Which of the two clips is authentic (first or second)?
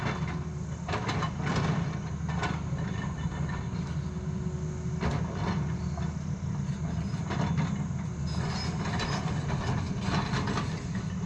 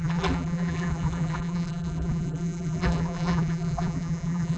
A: first